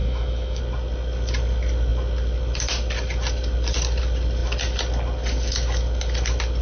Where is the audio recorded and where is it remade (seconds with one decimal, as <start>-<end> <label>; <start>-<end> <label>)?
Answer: 0.0-0.6 remade; 0.6-6.6 recorded